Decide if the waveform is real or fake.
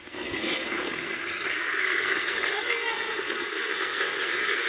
fake